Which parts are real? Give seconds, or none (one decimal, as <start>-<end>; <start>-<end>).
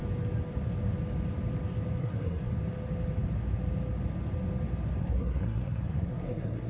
0.0-2.0; 2.5-5.0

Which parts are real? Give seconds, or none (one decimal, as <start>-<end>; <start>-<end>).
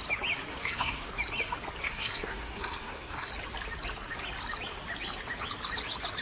0.0-0.5; 1.1-1.8; 3.3-6.2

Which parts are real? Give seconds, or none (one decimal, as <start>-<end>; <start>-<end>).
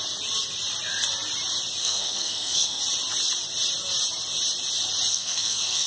0.0-1.8; 2.8-5.1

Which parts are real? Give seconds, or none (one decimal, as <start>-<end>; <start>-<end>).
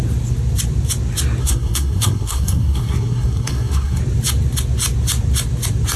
0.0-1.4; 4.0-6.0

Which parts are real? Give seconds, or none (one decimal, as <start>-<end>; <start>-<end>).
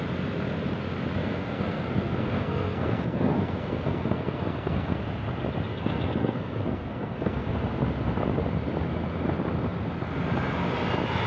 0.0-1.2; 5.0-5.7; 7.5-11.3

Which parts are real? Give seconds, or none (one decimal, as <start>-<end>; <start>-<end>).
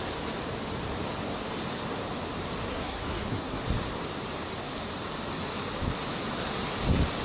0.0-2.7; 3.6-7.2